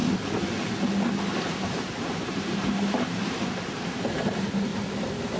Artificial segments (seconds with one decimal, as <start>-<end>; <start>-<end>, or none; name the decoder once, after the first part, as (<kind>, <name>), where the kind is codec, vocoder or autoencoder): 1.4-4.7 (vocoder, BigVGAN v2)